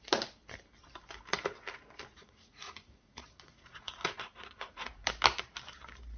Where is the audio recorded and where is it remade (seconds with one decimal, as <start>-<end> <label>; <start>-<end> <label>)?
0.0-2.1 recorded; 2.1-5.1 remade; 5.1-6.2 recorded